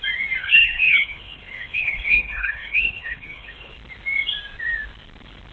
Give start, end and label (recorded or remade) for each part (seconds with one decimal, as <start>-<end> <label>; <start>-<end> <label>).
0.0-0.4 recorded; 0.4-3.7 remade; 3.7-5.5 recorded